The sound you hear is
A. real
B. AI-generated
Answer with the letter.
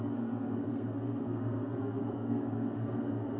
B